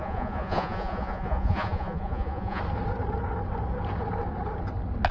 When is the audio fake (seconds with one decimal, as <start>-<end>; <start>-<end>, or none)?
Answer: 0.0-2.6